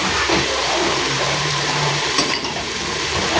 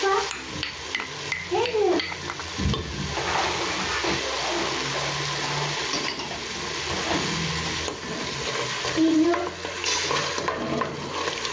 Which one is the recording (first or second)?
second